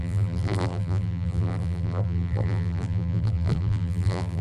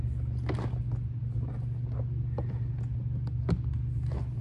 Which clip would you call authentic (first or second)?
second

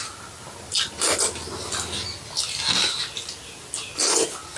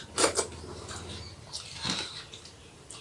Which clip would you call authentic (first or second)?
first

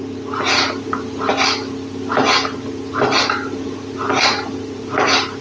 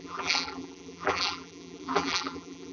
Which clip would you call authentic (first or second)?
first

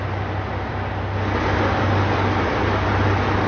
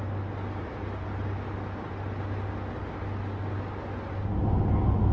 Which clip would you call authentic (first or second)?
second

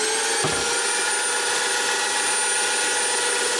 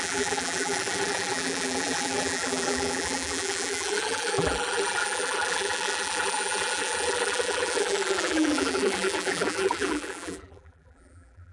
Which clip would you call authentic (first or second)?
first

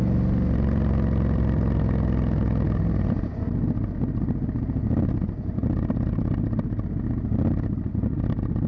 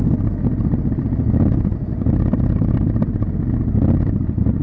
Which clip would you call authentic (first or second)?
first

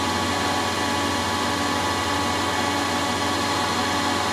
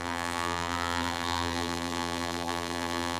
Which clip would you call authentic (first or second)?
first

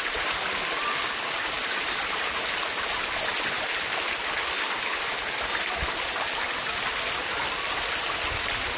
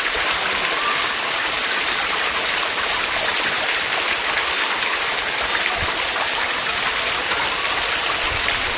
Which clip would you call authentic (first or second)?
first